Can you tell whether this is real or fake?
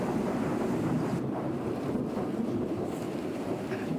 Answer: fake